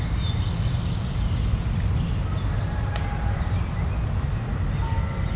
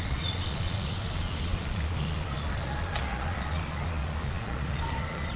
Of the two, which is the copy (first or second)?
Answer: second